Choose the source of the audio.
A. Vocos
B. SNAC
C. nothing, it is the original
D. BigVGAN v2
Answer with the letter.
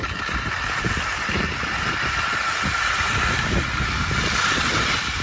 D